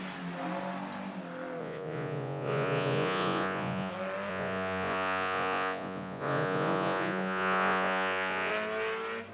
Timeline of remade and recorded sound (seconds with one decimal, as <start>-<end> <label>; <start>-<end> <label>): 0.0-1.6 recorded; 1.6-3.9 remade; 3.9-4.3 recorded; 4.3-8.5 remade; 8.5-9.3 recorded

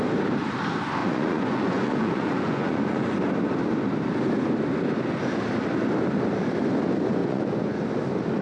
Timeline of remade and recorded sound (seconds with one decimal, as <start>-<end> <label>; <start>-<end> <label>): 0.0-1.0 recorded; 1.0-3.2 remade; 3.2-7.2 recorded; 7.2-7.8 remade; 7.8-8.4 recorded

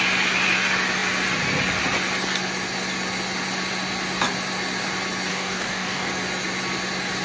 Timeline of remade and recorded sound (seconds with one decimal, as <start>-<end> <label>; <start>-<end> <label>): 0.0-5.3 recorded; 5.3-6.1 remade; 6.1-7.2 recorded

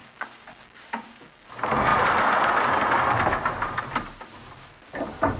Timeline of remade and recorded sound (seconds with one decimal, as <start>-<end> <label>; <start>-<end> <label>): 0.0-1.5 remade; 1.5-5.4 recorded

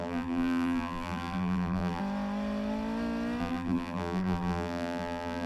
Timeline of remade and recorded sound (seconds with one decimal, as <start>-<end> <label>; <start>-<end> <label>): 0.0-2.0 remade; 2.0-3.4 recorded; 3.4-5.5 remade

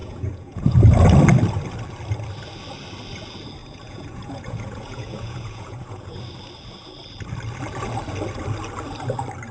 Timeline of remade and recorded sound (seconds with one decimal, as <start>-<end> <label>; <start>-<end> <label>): 0.0-0.8 remade; 0.8-3.6 recorded; 3.6-6.2 remade; 6.2-9.5 recorded

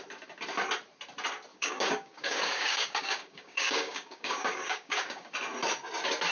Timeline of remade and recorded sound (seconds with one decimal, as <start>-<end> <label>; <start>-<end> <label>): 0.0-1.5 recorded; 1.5-5.3 remade; 5.3-6.3 recorded